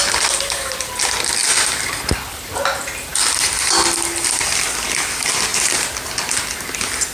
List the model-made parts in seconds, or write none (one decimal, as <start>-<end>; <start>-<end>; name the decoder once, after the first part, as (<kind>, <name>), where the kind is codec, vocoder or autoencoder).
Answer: 1.4-1.9 (vocoder, BigVGAN v2)